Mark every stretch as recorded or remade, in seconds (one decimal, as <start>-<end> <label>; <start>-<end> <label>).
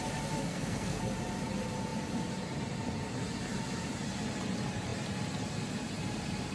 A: 0.0-0.5 recorded; 0.5-1.0 remade; 1.0-6.5 recorded